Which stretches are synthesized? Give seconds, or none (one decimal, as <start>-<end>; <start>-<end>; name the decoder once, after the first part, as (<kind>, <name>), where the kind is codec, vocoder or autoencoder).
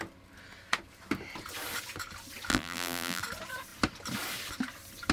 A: 2.5-3.2 (vocoder, BigVGAN v2)